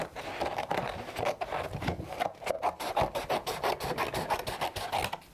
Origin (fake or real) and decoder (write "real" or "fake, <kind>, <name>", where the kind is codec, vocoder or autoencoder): real